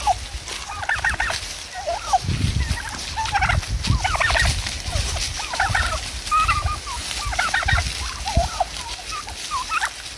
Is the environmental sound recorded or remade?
recorded